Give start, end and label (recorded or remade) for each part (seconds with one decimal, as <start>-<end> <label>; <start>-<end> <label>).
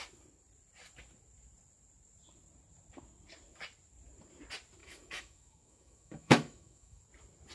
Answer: 0.0-4.8 recorded; 4.8-7.0 remade; 7.0-7.5 recorded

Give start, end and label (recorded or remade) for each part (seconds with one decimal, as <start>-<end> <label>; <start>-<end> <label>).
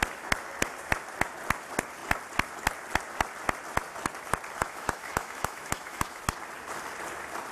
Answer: 0.0-4.6 recorded; 4.6-6.2 remade; 6.2-7.5 recorded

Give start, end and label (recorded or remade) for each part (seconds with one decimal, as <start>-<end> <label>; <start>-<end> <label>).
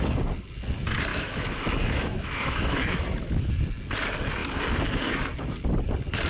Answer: 0.0-1.1 recorded; 1.1-3.5 remade; 3.5-6.3 recorded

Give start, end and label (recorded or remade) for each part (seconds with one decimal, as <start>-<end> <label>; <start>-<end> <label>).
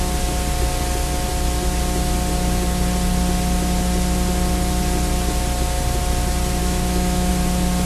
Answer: 0.0-6.6 recorded; 6.6-7.3 remade; 7.3-7.9 recorded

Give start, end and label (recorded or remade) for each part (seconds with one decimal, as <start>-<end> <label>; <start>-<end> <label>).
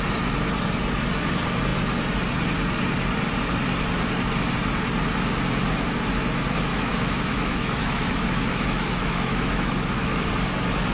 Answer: 0.0-6.7 recorded; 6.7-10.3 remade; 10.3-10.9 recorded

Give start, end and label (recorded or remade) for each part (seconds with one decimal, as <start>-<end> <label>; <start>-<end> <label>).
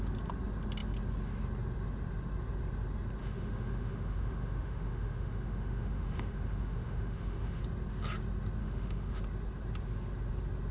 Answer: 0.0-3.2 recorded; 3.2-7.6 remade; 7.6-8.6 recorded; 8.6-9.2 remade; 9.2-10.7 recorded